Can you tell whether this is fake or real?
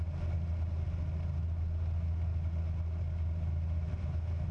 real